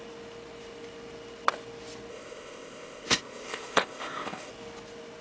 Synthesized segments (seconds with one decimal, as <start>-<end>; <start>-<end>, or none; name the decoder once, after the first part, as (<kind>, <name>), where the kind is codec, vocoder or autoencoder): 2.1-4.5 (codec, ZipCodec)